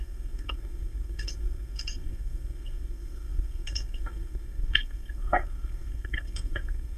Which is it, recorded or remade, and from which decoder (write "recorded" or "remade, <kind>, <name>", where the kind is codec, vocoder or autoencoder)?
remade, codec, SNAC